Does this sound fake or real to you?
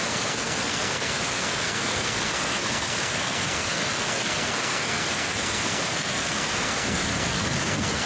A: fake